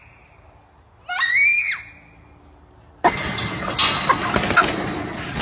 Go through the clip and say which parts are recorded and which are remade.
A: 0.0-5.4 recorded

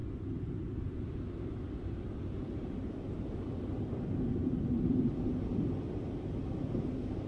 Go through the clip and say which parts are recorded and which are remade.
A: 0.0-4.1 remade; 4.1-7.3 recorded

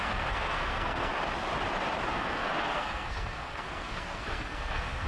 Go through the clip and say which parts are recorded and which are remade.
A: 0.0-1.1 remade; 1.1-2.1 recorded; 2.1-5.1 remade

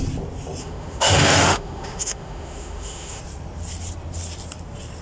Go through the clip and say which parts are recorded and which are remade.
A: 0.0-0.6 recorded; 0.6-3.2 remade; 3.2-5.0 recorded